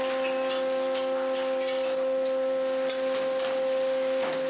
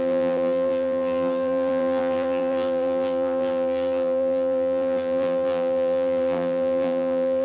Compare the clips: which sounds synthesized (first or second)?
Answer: second